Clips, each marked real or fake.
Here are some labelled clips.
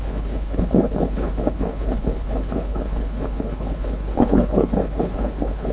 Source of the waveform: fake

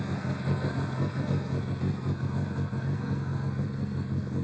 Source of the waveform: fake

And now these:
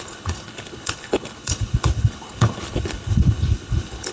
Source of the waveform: fake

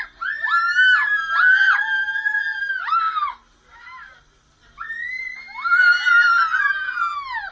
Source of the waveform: real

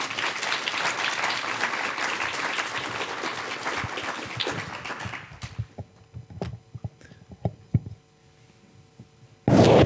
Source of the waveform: real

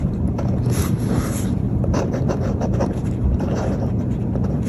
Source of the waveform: fake